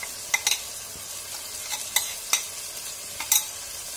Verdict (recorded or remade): recorded